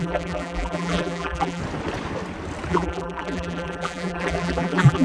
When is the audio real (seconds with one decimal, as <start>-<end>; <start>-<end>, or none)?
1.6-2.7

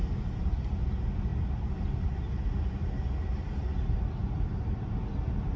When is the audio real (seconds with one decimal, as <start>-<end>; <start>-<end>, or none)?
0.0-5.6

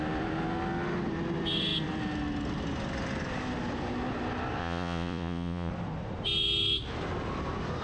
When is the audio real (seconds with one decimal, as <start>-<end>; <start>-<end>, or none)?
0.0-4.6; 5.7-7.8

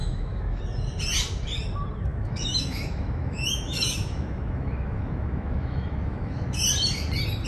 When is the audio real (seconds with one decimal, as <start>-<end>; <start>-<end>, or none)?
0.6-2.1; 6.6-7.5

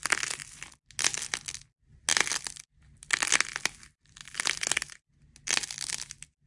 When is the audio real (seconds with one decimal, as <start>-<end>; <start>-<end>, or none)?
0.0-6.5

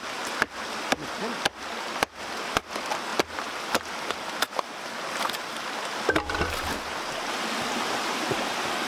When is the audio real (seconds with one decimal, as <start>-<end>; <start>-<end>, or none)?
0.0-8.9

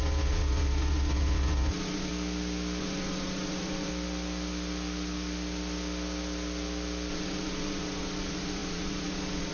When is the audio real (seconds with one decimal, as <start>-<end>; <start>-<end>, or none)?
2.1-2.8; 3.9-7.1

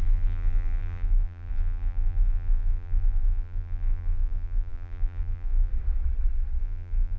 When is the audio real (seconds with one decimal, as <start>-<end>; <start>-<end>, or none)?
5.7-6.6